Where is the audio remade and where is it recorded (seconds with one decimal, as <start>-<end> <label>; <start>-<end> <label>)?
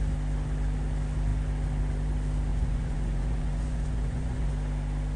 0.0-2.5 recorded; 2.5-4.5 remade; 4.5-5.2 recorded